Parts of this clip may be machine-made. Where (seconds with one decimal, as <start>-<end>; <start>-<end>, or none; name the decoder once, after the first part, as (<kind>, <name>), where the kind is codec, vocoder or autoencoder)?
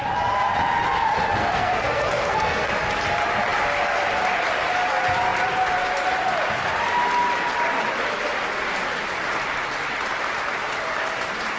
1.4-2.7 (codec, SNAC)